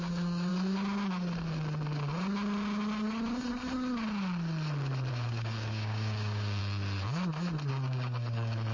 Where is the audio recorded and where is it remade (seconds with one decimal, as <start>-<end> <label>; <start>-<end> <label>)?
0.0-0.5 remade; 0.5-5.1 recorded; 5.1-6.6 remade; 6.6-7.7 recorded; 7.7-8.7 remade